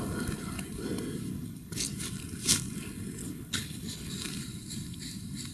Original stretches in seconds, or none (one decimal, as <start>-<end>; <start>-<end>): 0.0-1.3; 1.9-3.2; 4.1-5.5